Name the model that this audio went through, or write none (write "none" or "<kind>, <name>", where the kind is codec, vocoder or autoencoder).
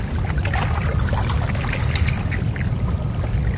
none